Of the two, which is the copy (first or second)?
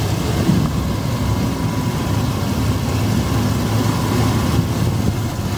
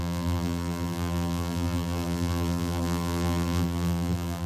second